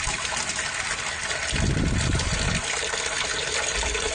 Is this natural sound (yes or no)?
yes